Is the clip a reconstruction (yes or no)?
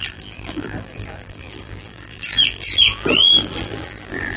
yes